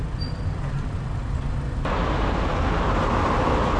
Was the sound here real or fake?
real